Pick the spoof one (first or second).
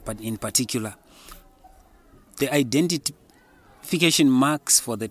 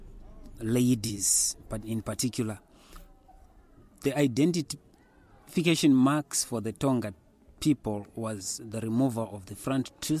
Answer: second